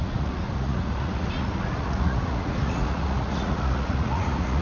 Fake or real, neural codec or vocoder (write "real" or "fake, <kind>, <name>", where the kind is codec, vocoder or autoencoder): fake, vocoder, Vocos